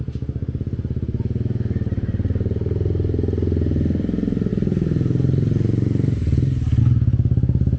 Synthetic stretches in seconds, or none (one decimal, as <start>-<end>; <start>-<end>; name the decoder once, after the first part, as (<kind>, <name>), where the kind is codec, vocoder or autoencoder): none